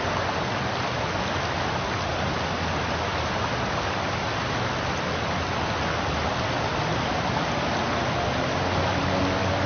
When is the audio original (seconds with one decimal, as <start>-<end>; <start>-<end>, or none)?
0.0-9.7